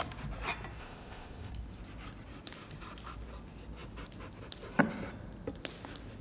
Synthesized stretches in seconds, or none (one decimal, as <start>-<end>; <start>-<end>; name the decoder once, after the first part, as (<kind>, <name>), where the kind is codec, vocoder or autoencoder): 0.8-1.5 (codec, ZipCodec)